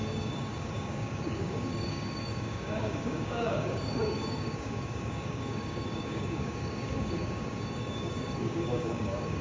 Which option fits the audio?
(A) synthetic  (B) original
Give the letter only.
A